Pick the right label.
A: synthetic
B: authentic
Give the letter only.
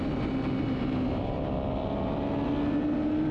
B